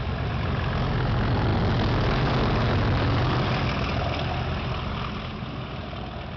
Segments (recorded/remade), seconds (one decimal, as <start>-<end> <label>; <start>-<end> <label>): 0.0-6.4 recorded